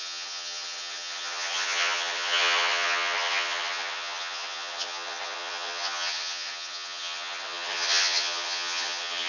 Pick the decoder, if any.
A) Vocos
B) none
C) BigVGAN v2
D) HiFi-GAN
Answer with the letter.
D